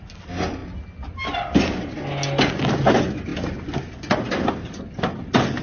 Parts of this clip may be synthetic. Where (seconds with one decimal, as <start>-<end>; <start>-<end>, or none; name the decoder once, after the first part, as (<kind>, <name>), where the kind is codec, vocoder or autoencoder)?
none